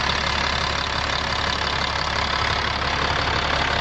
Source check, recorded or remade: recorded